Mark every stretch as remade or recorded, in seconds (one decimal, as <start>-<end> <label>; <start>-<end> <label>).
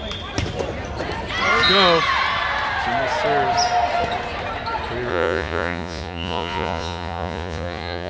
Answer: 0.0-5.1 recorded; 5.1-8.1 remade